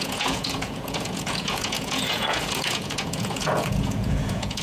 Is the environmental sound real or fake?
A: fake